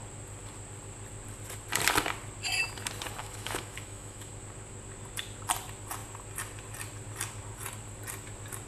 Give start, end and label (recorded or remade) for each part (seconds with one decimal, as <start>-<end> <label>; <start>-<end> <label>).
0.0-3.2 recorded; 3.2-4.3 remade; 4.3-8.7 recorded